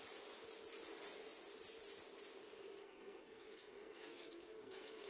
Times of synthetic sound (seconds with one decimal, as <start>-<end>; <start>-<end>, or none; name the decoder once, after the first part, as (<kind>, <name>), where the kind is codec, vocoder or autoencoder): 2.8-5.1 (codec, SNAC)